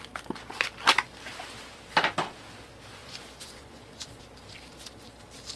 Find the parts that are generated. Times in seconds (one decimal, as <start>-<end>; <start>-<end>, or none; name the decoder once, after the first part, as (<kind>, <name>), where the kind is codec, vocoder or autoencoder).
3.0-4.2 (vocoder, Vocos)